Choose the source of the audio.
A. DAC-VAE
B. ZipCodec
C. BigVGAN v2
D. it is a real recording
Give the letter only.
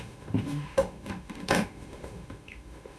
A